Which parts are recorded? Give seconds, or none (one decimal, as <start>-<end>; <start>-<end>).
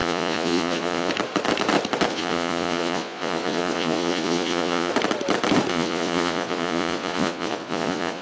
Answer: 1.1-2.1; 4.9-5.7